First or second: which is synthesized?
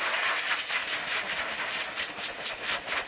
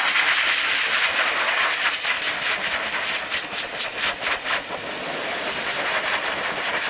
second